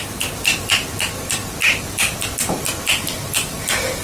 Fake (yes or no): no